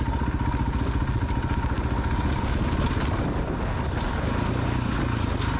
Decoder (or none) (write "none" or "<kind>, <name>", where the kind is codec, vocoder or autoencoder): none